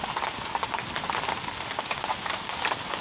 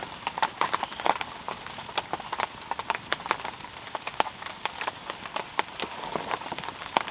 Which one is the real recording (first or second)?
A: first